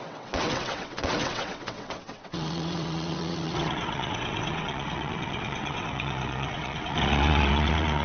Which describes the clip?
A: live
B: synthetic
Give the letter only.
B